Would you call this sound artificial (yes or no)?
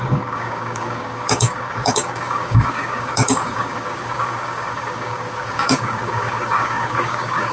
yes